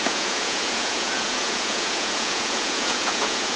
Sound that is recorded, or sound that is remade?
remade